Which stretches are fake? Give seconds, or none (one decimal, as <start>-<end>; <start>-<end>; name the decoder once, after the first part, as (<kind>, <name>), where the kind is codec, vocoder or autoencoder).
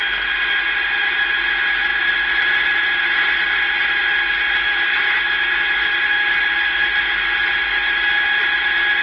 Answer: none